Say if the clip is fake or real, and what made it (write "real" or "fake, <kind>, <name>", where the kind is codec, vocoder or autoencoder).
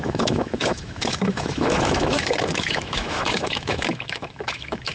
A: fake, autoencoder, DAC-VAE